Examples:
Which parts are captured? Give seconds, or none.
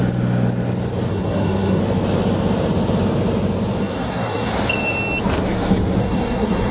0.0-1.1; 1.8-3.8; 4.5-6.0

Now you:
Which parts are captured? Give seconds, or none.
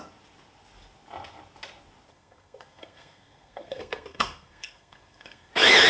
0.0-2.1; 5.5-5.9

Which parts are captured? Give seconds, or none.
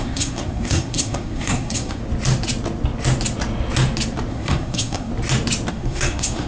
2.0-4.3; 5.1-5.7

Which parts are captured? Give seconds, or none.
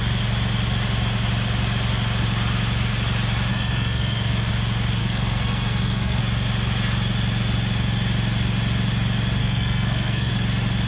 0.0-3.5; 4.5-5.0; 6.2-9.4; 10.3-10.9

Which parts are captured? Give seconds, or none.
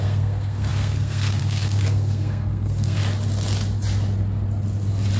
3.0-5.2